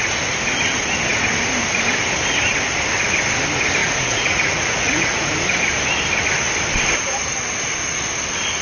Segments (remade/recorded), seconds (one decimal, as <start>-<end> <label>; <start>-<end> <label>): 0.0-3.8 recorded; 3.8-5.3 remade; 5.3-8.6 recorded